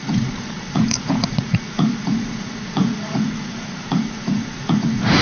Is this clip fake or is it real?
fake